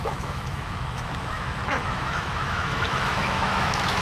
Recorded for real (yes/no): no